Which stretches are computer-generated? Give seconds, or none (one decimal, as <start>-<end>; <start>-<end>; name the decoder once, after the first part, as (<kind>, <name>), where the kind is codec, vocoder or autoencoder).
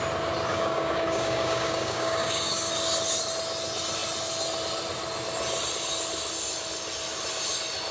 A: 0.5-2.7 (codec, DAC)